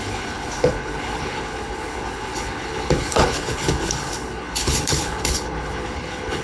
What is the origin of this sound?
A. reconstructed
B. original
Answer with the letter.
A